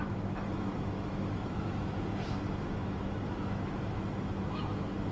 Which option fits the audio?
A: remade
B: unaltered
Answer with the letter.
A